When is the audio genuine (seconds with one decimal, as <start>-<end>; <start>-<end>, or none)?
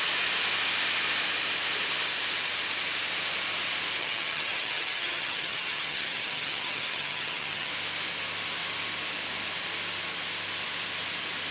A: 0.0-4.0; 7.7-11.5